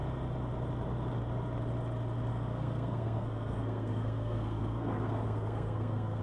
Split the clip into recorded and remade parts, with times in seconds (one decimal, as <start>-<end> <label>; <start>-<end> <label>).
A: 0.0-2.3 recorded; 2.3-6.2 remade